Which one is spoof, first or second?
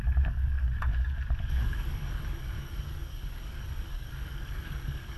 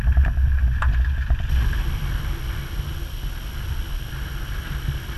first